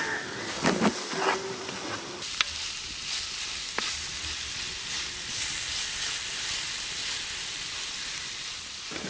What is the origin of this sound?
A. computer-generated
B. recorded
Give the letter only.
B